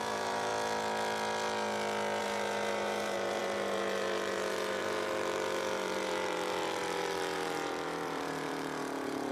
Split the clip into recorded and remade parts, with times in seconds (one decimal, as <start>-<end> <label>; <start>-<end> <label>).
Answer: 0.0-0.5 remade; 0.5-2.2 recorded; 2.2-9.3 remade